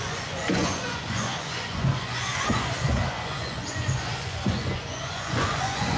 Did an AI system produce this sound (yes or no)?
yes